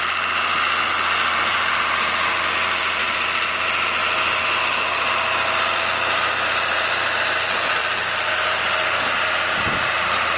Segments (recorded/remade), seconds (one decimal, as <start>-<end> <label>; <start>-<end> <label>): 0.0-3.0 recorded; 3.0-3.5 remade; 3.5-4.0 recorded; 4.0-5.1 remade; 5.1-10.4 recorded